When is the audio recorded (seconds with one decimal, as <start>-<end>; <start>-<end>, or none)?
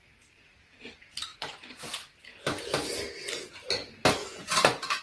0.0-1.3; 1.8-4.2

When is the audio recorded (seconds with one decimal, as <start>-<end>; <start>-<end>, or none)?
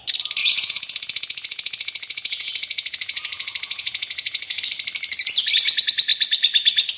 0.0-0.4; 4.6-7.0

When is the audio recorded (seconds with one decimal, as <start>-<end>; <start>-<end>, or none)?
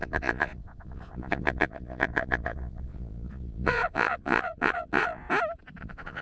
5.2-5.8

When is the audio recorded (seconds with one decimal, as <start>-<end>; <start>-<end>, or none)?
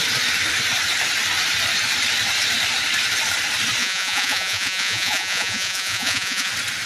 0.0-3.8; 6.5-6.9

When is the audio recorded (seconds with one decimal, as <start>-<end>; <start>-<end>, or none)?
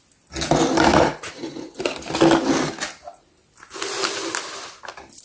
0.0-0.9; 1.7-5.2